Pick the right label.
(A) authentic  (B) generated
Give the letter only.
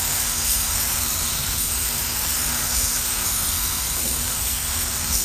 B